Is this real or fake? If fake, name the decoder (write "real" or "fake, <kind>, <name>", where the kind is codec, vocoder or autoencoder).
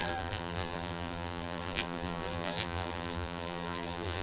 fake, vocoder, BigVGAN v2